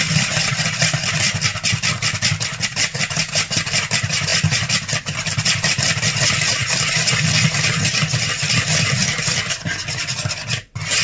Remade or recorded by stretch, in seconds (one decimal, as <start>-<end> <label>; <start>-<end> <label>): 0.0-11.0 recorded

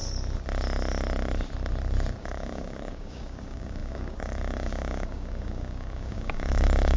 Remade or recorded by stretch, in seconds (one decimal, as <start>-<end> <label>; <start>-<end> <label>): 0.0-2.2 recorded; 2.2-7.0 remade

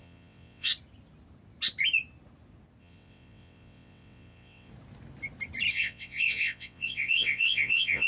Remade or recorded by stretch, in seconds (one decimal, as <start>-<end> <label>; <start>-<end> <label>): 0.0-0.7 remade; 0.7-2.8 recorded; 2.8-4.7 remade; 4.7-5.7 recorded; 5.7-8.1 remade

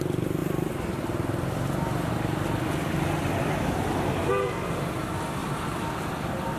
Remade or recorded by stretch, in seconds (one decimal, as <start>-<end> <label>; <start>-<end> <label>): 0.0-5.4 recorded; 5.4-6.6 remade

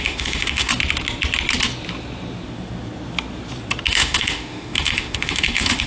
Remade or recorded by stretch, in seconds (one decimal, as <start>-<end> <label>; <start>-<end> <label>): 0.0-0.7 remade; 0.7-3.9 recorded; 3.9-5.9 remade